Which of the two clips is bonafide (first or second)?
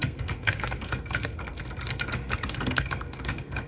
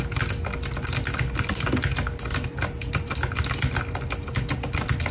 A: second